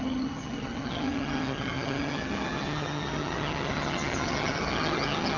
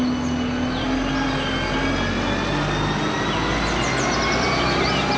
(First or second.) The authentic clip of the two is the second